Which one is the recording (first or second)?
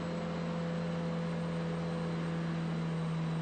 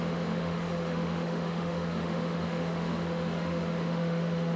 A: first